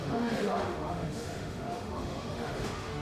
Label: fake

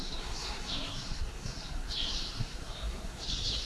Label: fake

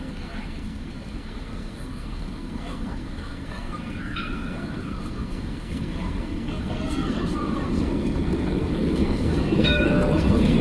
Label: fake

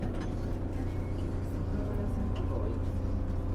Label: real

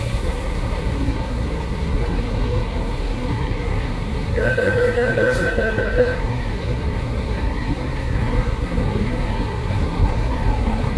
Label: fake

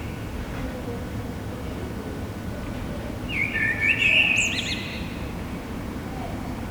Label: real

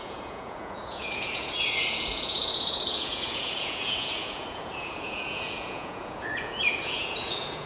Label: fake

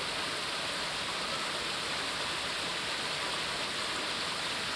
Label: real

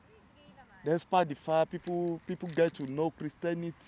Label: real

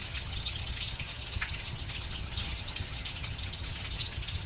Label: fake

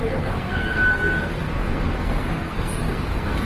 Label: fake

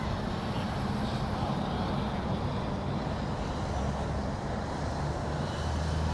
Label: real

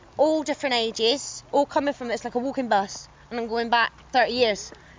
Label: real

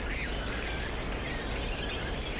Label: real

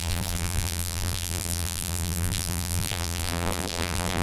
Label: fake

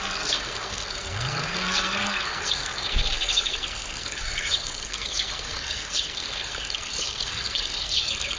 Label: fake